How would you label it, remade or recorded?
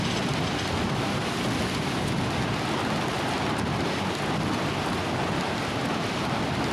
recorded